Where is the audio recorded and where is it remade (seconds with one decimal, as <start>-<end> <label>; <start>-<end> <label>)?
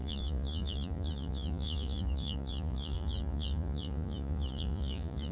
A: 0.0-5.3 remade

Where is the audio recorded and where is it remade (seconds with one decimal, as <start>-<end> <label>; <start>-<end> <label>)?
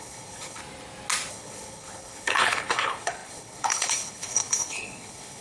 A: 0.0-0.6 remade; 0.6-1.3 recorded; 1.3-5.4 remade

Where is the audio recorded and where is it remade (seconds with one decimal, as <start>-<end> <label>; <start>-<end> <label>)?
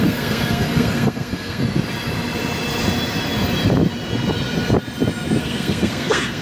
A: 0.0-1.6 remade; 1.6-5.4 recorded; 5.4-6.4 remade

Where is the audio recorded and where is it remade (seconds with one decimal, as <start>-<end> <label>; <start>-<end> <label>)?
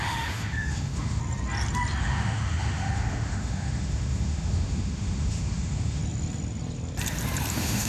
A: 0.0-1.2 remade; 1.2-2.0 recorded; 2.0-6.0 remade; 6.0-7.5 recorded; 7.5-7.9 remade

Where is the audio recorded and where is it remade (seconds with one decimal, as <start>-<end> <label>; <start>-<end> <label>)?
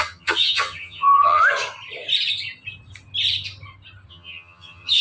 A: 0.0-1.4 remade; 1.4-4.1 recorded; 4.1-5.0 remade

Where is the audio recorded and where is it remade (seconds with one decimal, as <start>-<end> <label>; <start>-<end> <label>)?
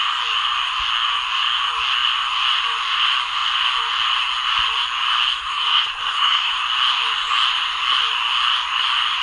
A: 0.0-5.4 recorded; 5.4-6.5 remade; 6.5-9.2 recorded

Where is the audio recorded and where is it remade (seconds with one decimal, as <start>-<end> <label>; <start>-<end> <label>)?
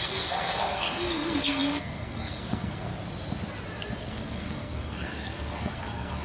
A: 0.0-2.9 remade; 2.9-4.0 recorded; 4.0-6.2 remade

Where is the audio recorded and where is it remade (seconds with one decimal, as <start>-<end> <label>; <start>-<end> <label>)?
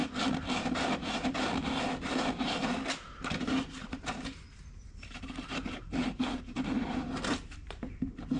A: 0.0-2.1 recorded; 2.1-8.4 remade